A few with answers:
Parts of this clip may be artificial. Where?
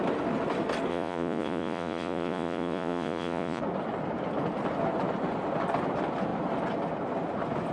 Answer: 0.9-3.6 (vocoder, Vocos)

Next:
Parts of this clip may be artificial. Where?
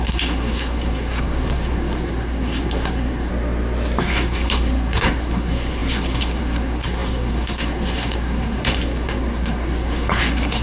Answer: 0.0-3.3 (codec, SNAC); 4.0-10.6